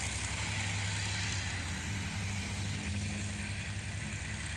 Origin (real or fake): real